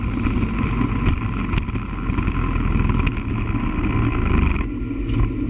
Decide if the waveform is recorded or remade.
recorded